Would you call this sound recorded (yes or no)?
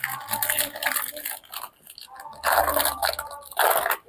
yes